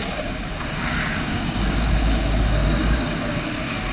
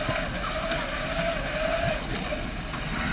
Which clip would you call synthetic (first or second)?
first